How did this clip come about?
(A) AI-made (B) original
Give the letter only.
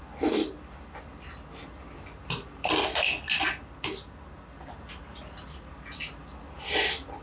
B